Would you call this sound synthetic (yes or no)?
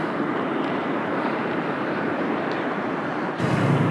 yes